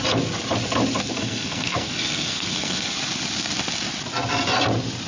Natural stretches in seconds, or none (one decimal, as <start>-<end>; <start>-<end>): 0.0-1.1; 2.9-5.1